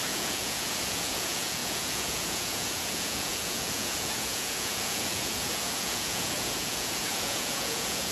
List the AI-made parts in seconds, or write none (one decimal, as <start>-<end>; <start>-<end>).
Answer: 0.0-8.1